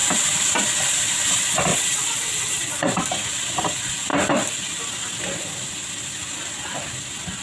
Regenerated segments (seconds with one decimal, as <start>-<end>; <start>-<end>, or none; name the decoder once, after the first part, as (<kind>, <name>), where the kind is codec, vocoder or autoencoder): 1.7-3.0 (vocoder, WaveNeXt)